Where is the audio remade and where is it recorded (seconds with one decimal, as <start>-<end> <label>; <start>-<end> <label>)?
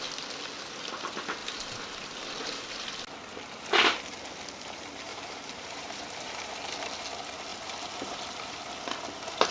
0.0-1.4 recorded; 1.4-3.0 remade; 3.0-5.1 recorded; 5.1-6.5 remade; 6.5-7.5 recorded; 7.5-8.2 remade; 8.2-9.5 recorded